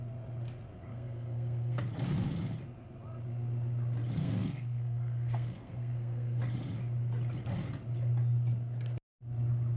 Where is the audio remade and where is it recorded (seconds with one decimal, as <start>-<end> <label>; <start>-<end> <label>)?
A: 0.0-0.9 recorded; 0.9-1.8 remade; 1.8-4.2 recorded; 4.2-6.4 remade; 6.4-9.8 recorded